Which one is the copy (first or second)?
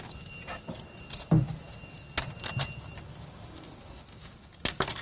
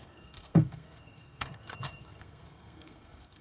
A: second